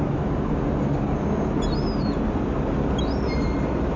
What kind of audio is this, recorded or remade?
recorded